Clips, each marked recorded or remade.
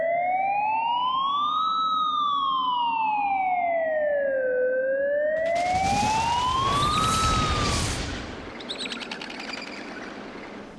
recorded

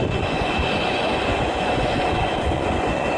remade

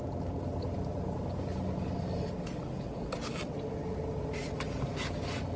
recorded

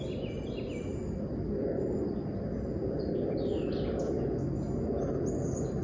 recorded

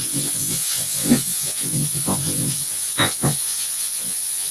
remade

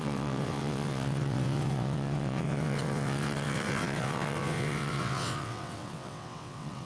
remade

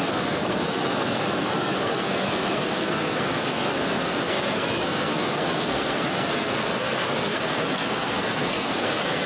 remade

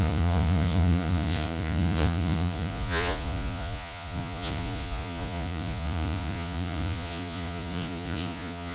remade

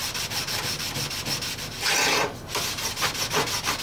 recorded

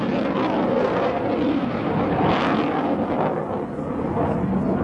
recorded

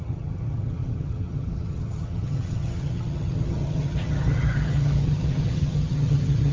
remade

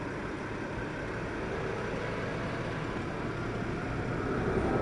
recorded